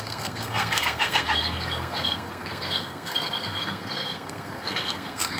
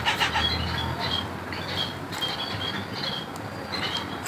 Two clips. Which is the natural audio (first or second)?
second